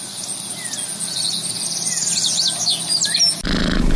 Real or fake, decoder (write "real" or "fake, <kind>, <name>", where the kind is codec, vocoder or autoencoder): real